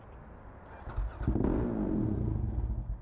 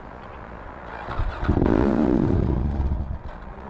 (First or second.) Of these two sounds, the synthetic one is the second